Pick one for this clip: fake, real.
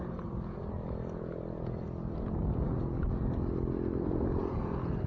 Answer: real